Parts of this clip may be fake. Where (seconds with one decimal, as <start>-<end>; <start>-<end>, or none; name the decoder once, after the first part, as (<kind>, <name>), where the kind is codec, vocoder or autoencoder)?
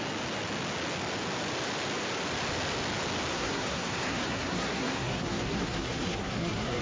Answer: 3.3-6.8 (codec, SNAC)